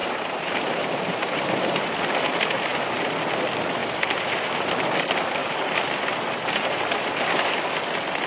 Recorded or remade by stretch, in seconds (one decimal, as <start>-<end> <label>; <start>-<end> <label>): 0.0-2.1 remade; 2.1-3.8 recorded; 3.8-4.7 remade; 4.7-5.4 recorded; 5.4-7.1 remade; 7.1-8.3 recorded